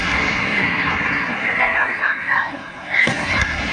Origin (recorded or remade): remade